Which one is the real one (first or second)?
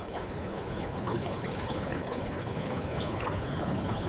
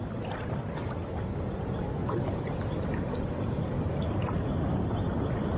second